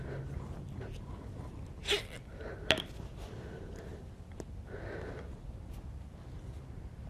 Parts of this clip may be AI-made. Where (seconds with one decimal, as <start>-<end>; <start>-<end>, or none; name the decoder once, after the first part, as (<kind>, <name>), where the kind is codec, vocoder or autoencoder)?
1.8-6.1 (vocoder, BigVGAN v2)